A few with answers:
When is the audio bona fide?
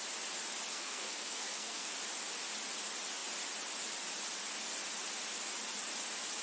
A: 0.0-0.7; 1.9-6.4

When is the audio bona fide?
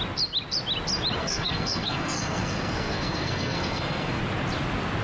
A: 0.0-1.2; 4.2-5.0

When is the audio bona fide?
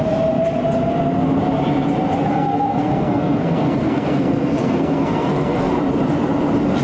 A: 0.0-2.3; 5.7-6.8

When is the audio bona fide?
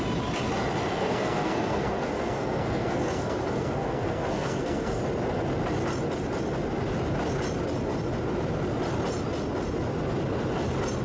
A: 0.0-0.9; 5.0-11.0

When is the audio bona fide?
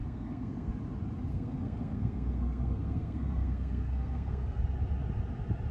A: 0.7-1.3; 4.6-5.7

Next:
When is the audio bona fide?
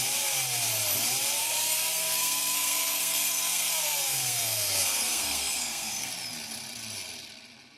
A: 0.0-1.4; 6.1-7.8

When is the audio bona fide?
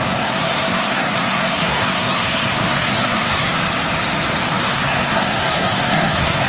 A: 3.5-4.6